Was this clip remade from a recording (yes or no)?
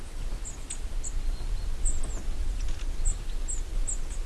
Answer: no